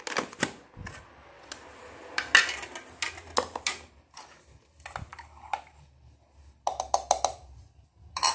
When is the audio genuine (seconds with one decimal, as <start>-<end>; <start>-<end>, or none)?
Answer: 0.0-8.3